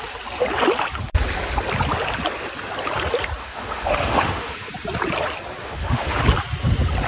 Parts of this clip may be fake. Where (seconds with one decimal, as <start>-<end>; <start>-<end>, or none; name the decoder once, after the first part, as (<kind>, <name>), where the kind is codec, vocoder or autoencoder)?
3.4-4.7 (autoencoder, DAC-VAE); 5.6-6.2